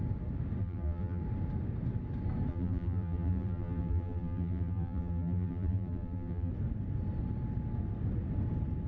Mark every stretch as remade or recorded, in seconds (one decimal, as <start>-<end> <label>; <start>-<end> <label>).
0.0-0.6 recorded; 0.6-1.2 remade; 1.2-2.5 recorded; 2.5-6.5 remade; 6.5-8.9 recorded